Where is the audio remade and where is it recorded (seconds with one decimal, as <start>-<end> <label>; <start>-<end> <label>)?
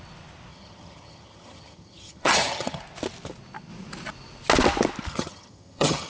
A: 0.0-0.5 recorded; 0.5-2.8 remade; 2.8-5.1 recorded; 5.1-6.1 remade